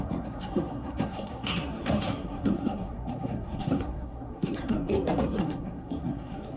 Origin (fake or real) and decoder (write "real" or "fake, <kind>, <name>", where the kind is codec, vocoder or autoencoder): fake, codec, SNAC